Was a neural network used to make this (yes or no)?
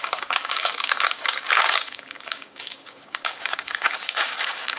yes